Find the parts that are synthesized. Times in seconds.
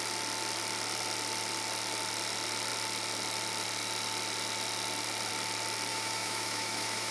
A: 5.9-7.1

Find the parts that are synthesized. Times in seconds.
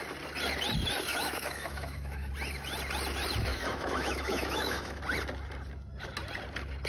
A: 1.1-2.3; 3.5-5.0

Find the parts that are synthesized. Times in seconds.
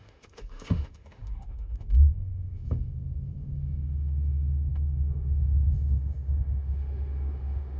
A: 0.0-7.8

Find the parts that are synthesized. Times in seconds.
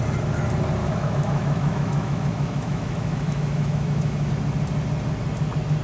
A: 0.8-4.3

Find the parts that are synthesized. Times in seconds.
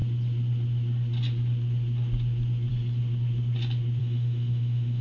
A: 4.0-5.0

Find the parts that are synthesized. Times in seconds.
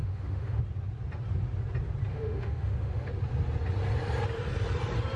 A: 0.0-0.6; 2.1-3.1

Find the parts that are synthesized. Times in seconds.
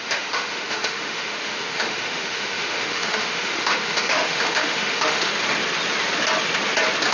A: 0.0-5.3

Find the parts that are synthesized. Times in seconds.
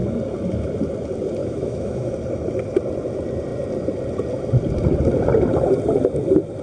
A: 1.4-2.1